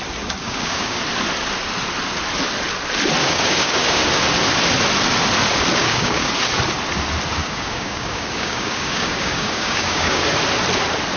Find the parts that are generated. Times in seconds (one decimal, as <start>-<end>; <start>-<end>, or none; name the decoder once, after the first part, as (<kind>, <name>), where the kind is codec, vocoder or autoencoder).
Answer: 0.4-1.0 (codec, DAC); 3.2-4.0; 5.8-6.3; 7.4-10.2